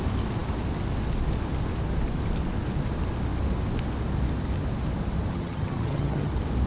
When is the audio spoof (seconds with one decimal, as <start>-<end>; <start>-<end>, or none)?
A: 5.3-6.3